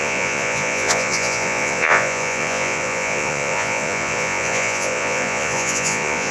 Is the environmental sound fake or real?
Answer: fake